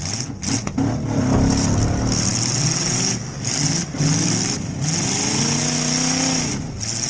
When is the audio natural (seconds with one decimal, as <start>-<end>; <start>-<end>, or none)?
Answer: 0.0-7.1